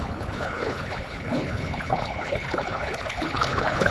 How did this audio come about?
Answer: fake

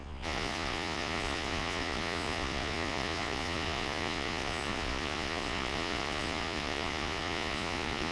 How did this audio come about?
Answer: fake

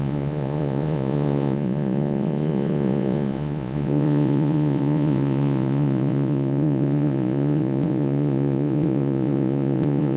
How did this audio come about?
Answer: fake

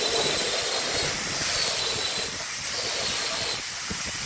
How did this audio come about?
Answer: real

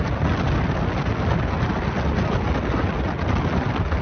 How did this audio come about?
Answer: real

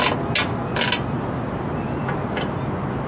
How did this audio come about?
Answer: real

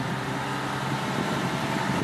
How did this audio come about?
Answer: real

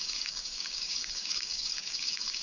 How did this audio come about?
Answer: fake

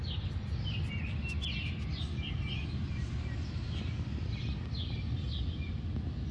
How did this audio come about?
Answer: real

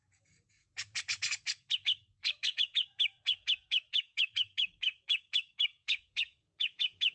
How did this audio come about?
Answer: fake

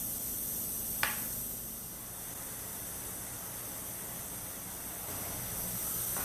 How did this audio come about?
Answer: real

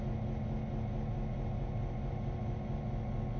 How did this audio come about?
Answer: real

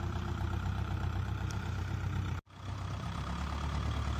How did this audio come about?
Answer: fake